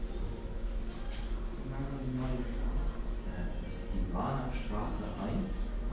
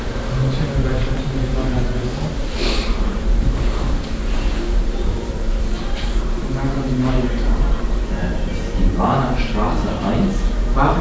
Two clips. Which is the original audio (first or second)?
first